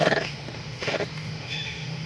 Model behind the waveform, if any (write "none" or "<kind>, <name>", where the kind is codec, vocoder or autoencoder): autoencoder, DAC-VAE